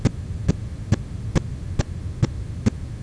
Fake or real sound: real